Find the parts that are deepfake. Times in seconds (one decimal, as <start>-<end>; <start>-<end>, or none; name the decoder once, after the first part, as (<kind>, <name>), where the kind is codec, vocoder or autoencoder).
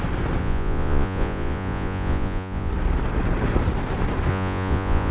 0.4-2.7 (vocoder, Vocos); 4.3-5.1